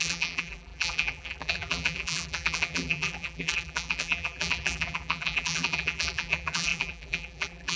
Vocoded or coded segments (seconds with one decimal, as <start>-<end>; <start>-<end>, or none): 0.0-7.8